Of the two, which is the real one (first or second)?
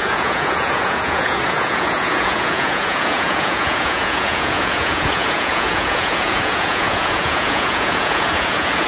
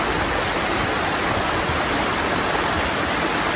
second